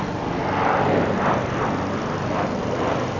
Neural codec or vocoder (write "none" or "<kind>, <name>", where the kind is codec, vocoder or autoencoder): none